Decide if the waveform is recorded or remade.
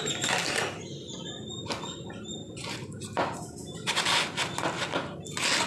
recorded